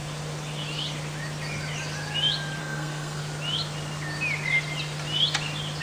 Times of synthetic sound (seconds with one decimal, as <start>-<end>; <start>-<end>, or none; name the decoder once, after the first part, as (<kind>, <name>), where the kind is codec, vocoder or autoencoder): 2.6-3.2 (codec, SNAC)